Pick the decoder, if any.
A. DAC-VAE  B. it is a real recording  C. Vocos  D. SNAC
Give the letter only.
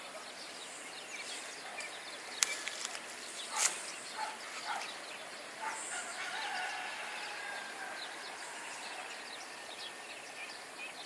B